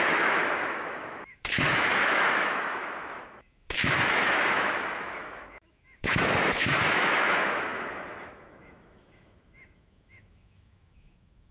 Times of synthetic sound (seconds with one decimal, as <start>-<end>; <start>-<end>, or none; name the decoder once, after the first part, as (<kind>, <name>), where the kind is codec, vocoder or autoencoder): 0.0-11.5 (autoencoder, DAC-VAE)